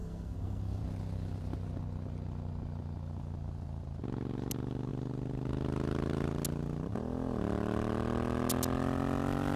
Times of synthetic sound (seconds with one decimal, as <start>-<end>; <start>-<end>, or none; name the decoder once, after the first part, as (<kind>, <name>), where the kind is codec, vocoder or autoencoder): 0.0-0.8 (codec, SNAC)